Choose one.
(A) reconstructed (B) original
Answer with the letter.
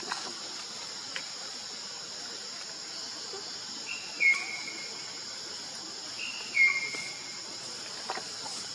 B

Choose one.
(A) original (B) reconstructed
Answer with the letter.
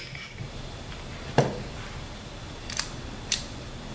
A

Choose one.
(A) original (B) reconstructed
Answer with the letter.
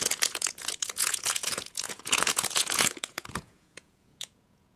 B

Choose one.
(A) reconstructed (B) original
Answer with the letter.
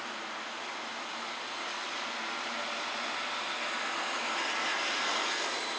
B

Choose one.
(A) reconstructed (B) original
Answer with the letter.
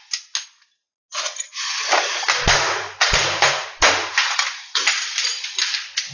B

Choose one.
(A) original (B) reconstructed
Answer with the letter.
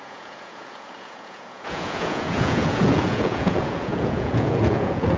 B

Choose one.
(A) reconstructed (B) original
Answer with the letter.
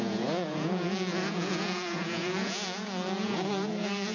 A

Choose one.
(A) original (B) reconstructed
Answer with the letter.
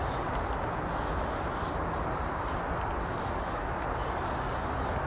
A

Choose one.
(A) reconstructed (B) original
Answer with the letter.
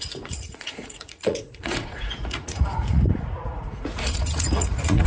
A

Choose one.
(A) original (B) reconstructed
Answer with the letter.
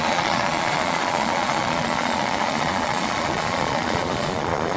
B